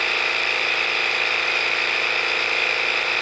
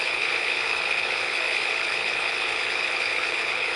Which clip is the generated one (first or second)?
second